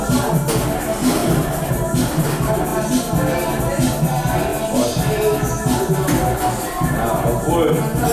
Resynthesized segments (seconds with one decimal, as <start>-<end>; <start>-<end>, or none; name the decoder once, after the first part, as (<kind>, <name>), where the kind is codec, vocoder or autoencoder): none